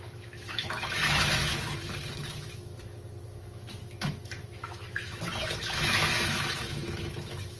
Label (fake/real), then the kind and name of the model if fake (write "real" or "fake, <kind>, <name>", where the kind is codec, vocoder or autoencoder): fake, autoencoder, DAC-VAE